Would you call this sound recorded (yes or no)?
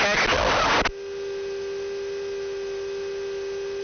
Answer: yes